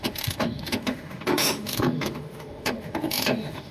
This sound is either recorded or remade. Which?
remade